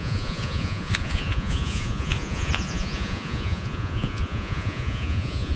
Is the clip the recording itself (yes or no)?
no